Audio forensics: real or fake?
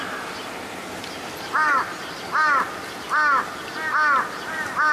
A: real